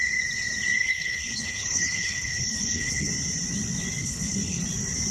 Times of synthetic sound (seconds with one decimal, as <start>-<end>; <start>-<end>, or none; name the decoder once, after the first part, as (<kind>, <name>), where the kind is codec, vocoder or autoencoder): 0.8-3.1 (codec, HILCodec); 4.0-4.6